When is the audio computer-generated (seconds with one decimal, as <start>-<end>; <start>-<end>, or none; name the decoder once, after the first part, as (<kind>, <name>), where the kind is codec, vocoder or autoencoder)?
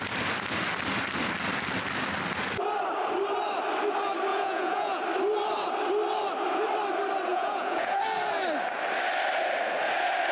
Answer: 4.3-5.0 (vocoder, Vocos); 7.3-8.0